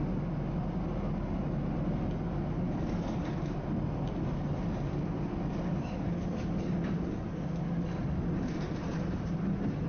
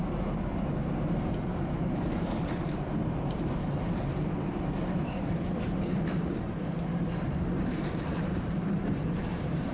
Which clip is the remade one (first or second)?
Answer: second